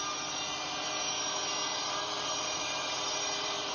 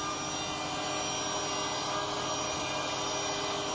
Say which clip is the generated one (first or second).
first